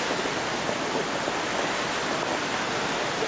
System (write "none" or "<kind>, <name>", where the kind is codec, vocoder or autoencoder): none